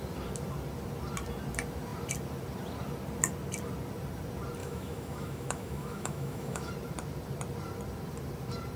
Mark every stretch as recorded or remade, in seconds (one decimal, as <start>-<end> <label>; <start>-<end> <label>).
0.0-4.6 recorded; 4.6-6.7 remade; 6.7-8.8 recorded